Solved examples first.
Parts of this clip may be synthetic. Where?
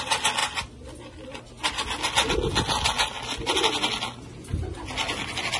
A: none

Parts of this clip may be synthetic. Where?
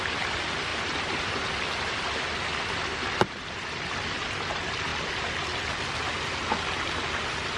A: 0.7-1.5 (vocoder, BigVGAN v2)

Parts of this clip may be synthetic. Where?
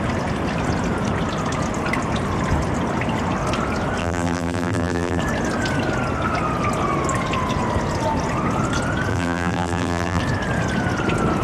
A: 4.0-5.2 (vocoder, BigVGAN v2); 9.1-10.2